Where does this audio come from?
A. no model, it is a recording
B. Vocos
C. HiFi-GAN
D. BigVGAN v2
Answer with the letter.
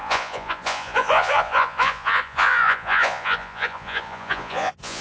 B